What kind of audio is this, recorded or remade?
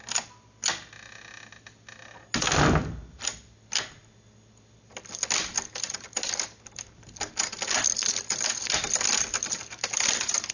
recorded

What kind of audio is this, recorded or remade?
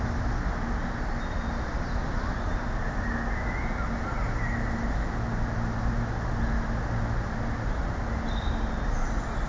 recorded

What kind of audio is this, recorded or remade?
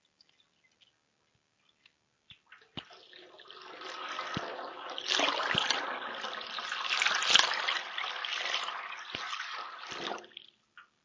recorded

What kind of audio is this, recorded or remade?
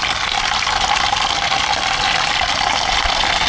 recorded